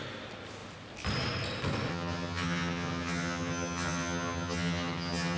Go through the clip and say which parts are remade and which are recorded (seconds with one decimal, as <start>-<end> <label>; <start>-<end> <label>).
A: 0.0-1.9 recorded; 1.9-5.4 remade